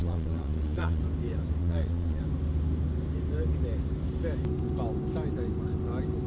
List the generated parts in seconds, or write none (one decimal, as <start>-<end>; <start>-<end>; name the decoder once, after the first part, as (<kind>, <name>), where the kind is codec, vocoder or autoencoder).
0.0-1.0 (vocoder, Vocos); 1.6-2.2